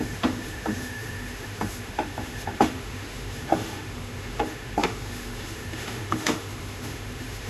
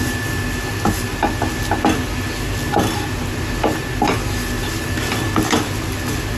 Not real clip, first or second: first